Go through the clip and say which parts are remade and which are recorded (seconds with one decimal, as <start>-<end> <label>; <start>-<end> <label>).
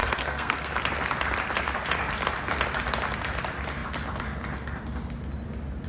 0.0-0.7 remade; 0.7-5.9 recorded